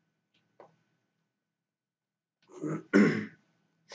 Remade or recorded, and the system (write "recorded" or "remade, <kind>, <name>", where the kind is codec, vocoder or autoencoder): recorded